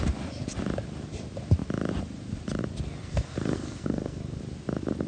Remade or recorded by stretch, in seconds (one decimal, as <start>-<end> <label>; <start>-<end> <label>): 0.0-3.0 recorded; 3.0-4.4 remade; 4.4-5.1 recorded